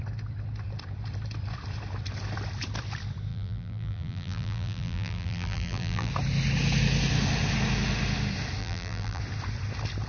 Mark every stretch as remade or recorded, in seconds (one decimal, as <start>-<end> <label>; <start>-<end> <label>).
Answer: 0.0-3.3 recorded; 3.3-6.1 remade; 6.1-8.6 recorded; 8.6-9.2 remade; 9.2-10.1 recorded